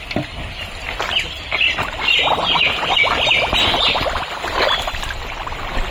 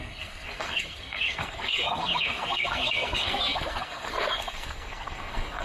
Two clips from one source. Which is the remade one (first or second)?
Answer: second